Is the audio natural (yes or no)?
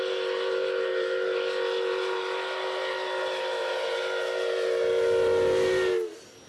yes